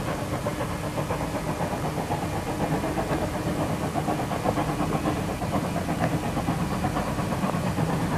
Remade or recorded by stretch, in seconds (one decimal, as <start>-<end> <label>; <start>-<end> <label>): 0.0-8.2 recorded